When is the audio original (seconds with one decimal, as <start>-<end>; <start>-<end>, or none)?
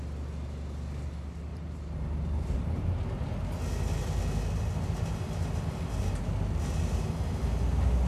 0.0-1.5; 3.2-8.1